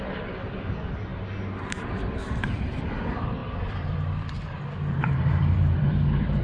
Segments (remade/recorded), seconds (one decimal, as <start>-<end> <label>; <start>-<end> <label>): 0.0-3.4 recorded; 3.4-6.0 remade; 6.0-6.4 recorded